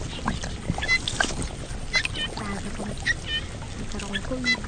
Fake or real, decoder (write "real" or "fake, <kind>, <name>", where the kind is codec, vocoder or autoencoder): real